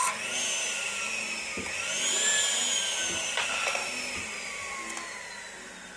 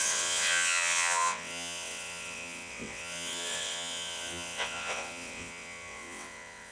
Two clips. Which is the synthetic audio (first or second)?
second